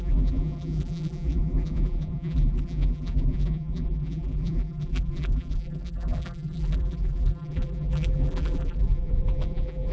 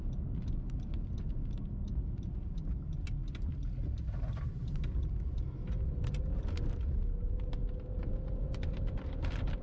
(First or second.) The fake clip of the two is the first